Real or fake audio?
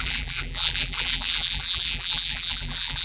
fake